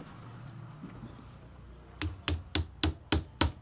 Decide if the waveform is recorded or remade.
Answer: recorded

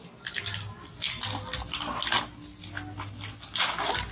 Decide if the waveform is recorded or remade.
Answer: recorded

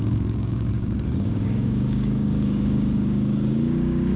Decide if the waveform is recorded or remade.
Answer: remade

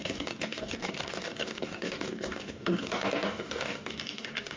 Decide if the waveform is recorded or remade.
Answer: remade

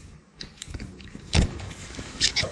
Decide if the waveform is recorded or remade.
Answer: remade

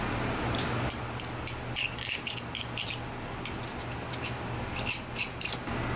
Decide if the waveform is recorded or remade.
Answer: recorded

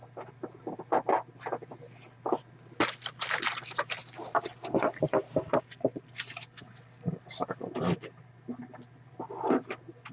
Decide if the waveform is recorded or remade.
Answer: recorded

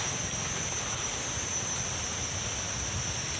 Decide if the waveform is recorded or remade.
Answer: recorded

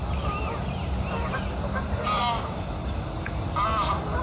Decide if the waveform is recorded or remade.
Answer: recorded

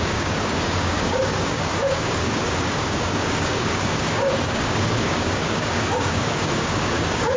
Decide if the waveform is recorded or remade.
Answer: remade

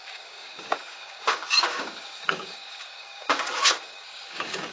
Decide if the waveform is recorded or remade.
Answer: remade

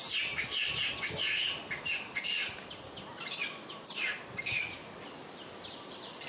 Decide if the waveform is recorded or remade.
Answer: recorded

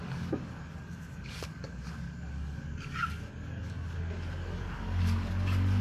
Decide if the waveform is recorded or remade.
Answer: remade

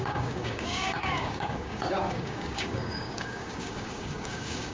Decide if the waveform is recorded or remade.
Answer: remade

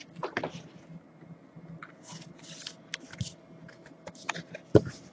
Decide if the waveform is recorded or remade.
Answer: recorded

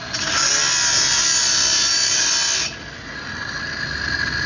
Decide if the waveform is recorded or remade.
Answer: recorded